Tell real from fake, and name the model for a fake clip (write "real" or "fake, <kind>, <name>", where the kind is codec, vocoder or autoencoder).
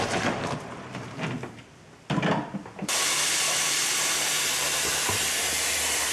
fake, vocoder, BigVGAN v2